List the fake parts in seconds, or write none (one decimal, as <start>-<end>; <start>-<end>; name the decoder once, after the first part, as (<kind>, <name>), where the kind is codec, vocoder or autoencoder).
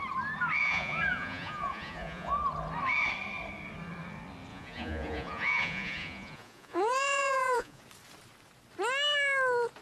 0.6-2.3 (vocoder, Vocos); 4.5-7.8